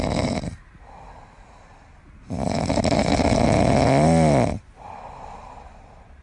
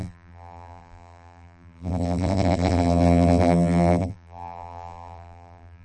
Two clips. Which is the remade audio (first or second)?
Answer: second